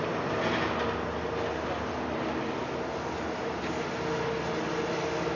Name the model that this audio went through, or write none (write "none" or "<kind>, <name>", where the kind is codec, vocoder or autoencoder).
none